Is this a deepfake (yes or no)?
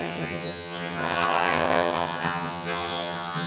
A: yes